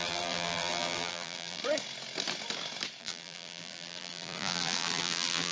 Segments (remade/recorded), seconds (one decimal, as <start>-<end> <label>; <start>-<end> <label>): 0.0-1.6 remade; 1.6-3.0 recorded; 3.0-5.5 remade